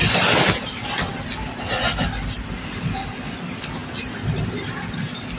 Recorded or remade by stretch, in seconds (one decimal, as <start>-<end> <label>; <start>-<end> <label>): 0.0-5.4 recorded